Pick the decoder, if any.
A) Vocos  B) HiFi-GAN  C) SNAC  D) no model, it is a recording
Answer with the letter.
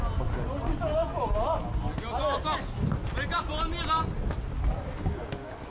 D